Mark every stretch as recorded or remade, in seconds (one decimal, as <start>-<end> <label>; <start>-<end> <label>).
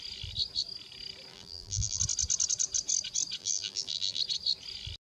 0.0-1.3 recorded; 1.3-2.0 remade; 2.0-3.4 recorded; 3.4-4.2 remade; 4.2-5.1 recorded